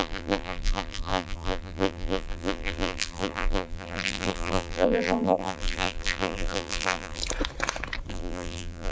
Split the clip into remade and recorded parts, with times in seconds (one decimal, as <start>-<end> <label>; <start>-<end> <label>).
0.0-7.2 remade; 7.2-8.1 recorded; 8.1-8.9 remade